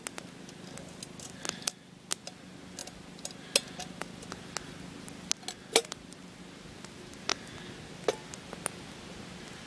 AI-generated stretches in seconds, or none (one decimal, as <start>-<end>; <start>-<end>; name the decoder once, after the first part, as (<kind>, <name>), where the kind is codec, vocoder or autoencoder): none